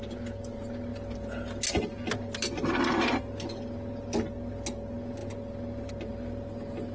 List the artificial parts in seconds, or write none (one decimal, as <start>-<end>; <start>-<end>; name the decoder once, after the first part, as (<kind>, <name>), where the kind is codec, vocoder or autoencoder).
none